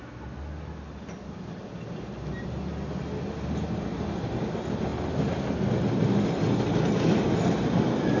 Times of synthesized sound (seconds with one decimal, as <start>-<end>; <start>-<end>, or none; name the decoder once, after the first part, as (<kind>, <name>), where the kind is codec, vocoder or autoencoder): none